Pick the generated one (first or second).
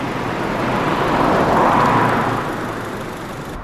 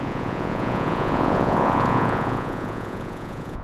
second